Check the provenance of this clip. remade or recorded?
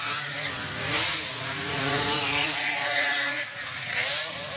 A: remade